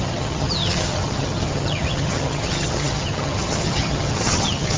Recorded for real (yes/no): no